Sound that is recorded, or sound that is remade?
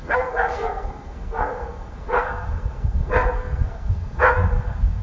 remade